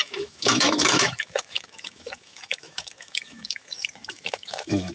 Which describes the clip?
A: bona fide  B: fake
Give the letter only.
B